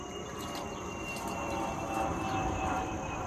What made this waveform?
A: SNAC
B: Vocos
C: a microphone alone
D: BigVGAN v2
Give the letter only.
D